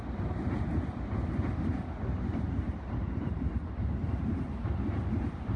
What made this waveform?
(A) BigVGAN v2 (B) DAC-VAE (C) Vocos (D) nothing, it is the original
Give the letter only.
A